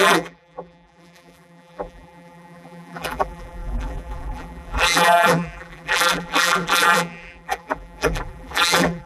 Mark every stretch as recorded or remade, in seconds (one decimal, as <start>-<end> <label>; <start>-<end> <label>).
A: 0.0-9.1 remade